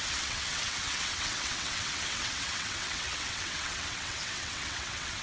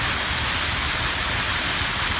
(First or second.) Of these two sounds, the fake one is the first